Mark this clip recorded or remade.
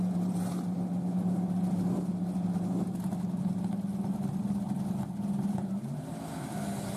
recorded